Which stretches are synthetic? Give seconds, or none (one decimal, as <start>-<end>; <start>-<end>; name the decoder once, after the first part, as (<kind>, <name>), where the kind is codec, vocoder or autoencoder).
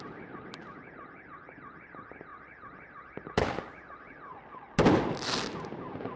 none